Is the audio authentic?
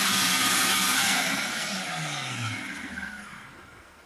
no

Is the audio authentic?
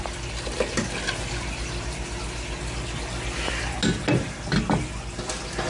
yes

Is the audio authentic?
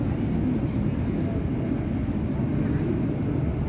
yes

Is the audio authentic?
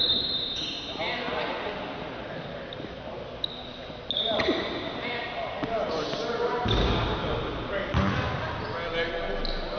yes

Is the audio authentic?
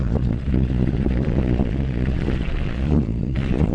no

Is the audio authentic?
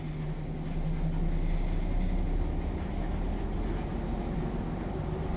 yes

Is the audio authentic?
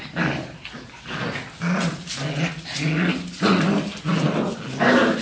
yes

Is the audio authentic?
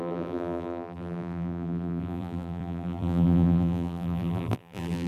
no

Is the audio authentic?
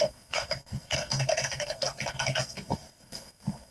no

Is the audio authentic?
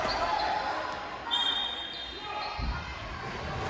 yes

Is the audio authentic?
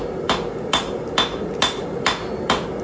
yes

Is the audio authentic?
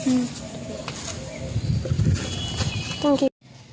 yes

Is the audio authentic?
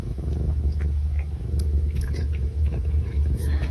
no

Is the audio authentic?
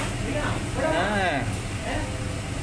yes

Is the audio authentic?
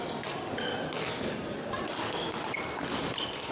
yes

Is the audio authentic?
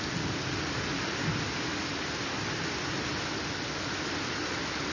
yes